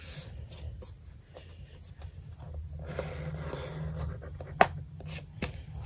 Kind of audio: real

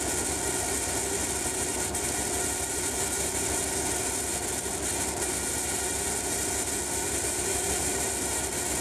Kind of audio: real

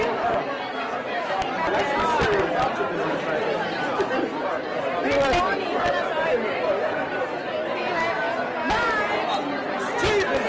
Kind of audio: real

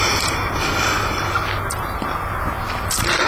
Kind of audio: real